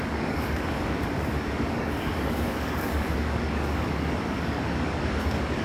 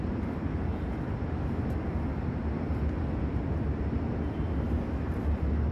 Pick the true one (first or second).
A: second